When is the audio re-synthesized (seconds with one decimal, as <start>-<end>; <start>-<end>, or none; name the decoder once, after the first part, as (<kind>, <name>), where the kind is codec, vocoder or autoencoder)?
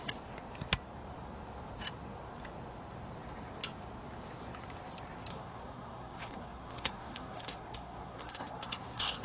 5.3-9.2 (codec, SNAC)